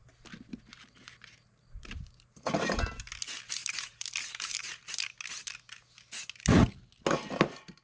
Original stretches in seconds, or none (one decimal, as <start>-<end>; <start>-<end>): 0.0-0.7; 2.9-3.6; 4.8-7.8